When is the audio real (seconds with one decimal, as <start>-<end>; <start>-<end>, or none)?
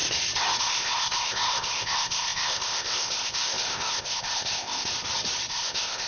0.0-0.6; 4.9-5.5